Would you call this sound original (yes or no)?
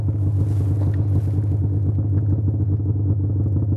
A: yes